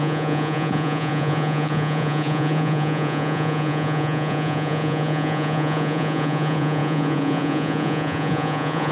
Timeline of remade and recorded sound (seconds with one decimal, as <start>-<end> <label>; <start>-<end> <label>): 0.0-8.9 remade